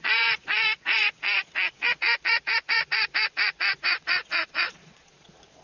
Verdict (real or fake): fake